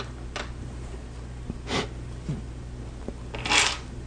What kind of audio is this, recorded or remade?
recorded